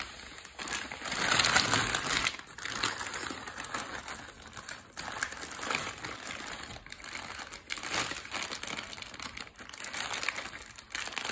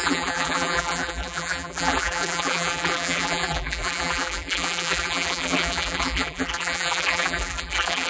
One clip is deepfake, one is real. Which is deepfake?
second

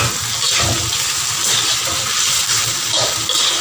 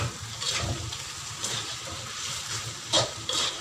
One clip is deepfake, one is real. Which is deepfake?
second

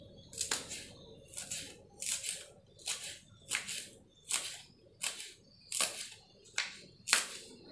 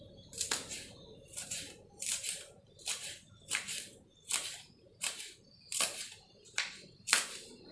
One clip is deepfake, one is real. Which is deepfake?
second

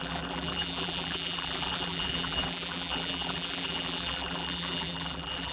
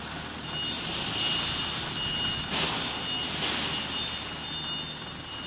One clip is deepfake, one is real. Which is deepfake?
first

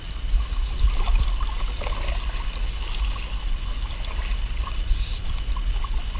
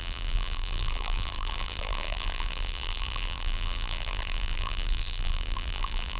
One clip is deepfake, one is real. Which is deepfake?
second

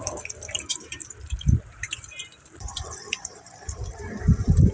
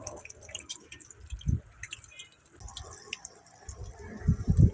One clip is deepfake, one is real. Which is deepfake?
first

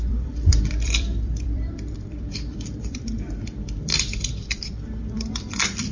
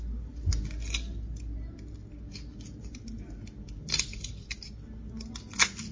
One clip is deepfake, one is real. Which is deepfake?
first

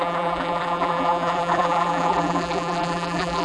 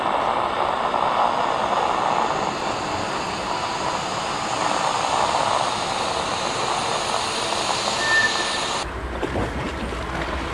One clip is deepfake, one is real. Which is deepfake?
first